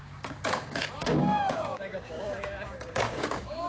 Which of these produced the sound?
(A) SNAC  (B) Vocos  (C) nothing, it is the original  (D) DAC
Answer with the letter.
D